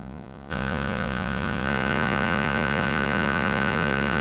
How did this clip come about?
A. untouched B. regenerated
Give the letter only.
B